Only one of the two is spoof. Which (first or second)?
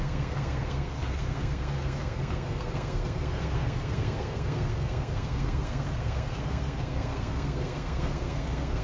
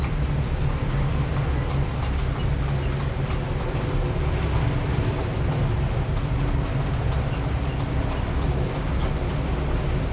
first